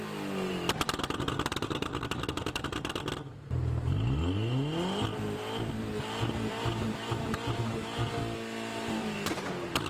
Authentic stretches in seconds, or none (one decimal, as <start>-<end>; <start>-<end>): 0.0-1.9; 2.9-8.7; 9.5-9.9